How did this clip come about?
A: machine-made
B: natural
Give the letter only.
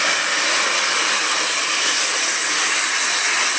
B